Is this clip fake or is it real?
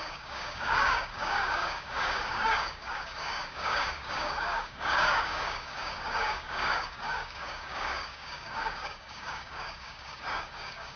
fake